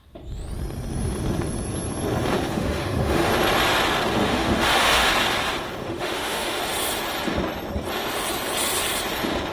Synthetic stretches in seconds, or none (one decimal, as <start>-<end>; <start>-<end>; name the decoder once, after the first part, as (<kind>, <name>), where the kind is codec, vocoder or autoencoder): 2.5-3.3 (autoencoder, DAC-VAE); 4.2-5.1; 5.9-6.6